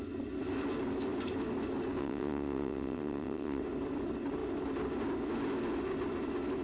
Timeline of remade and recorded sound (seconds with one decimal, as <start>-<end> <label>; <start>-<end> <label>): 0.0-2.0 recorded; 2.0-3.6 remade; 3.6-6.6 recorded

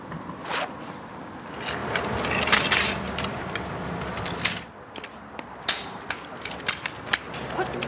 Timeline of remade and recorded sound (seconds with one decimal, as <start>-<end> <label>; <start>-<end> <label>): 0.0-1.8 recorded; 1.8-6.5 remade; 6.5-7.9 recorded

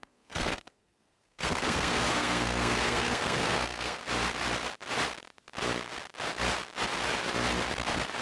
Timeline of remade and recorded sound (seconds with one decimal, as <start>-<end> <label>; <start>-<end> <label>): 0.0-4.0 remade; 4.0-8.2 recorded

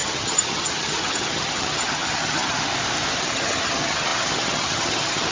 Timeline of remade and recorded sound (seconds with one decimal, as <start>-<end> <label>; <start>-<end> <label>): 0.0-2.7 remade; 2.7-3.2 recorded; 3.2-5.3 remade

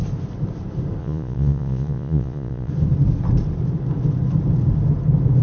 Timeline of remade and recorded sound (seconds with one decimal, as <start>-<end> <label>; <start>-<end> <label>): 0.0-1.0 recorded; 1.0-2.7 remade; 2.7-5.4 recorded

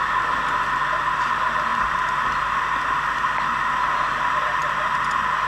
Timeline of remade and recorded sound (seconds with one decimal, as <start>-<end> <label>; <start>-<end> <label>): 0.0-5.5 recorded